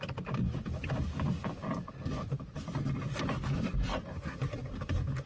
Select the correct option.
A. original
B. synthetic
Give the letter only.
A